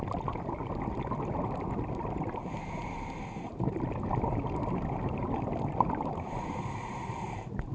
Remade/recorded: recorded